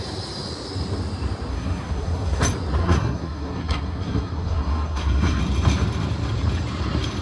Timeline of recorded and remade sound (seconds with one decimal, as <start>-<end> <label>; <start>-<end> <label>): 0.0-1.5 recorded; 1.5-2.4 remade; 2.4-2.8 recorded; 2.8-5.4 remade; 5.4-7.2 recorded